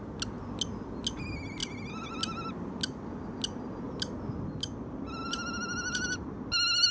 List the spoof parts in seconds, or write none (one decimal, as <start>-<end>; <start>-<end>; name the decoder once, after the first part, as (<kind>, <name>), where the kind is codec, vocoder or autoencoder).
none